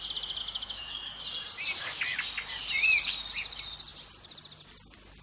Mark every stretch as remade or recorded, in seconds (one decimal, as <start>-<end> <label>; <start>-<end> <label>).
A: 0.0-0.4 recorded; 0.4-1.2 remade; 1.2-5.2 recorded